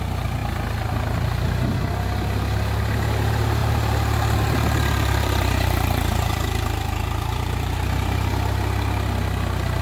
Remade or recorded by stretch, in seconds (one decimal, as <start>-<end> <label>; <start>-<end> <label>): 0.0-3.6 recorded; 3.6-8.3 remade; 8.3-9.8 recorded